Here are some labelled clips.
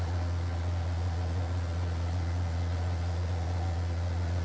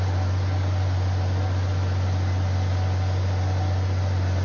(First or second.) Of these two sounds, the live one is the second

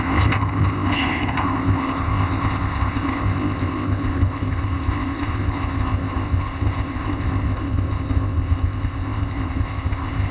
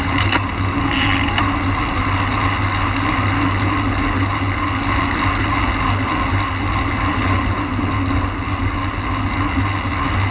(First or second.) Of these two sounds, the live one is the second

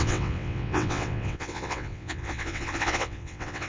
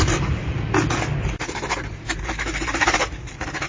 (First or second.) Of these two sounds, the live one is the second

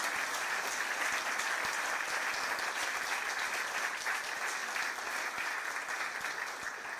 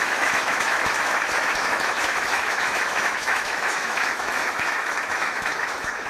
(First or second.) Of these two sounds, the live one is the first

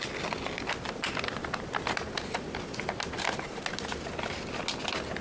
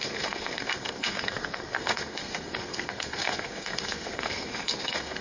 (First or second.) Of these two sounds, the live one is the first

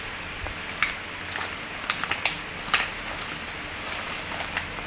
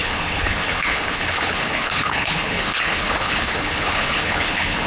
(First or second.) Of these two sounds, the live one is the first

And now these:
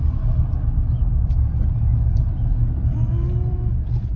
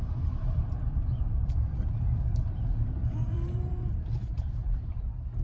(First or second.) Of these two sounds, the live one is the first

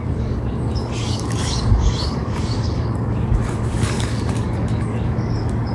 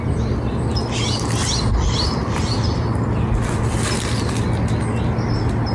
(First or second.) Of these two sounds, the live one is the second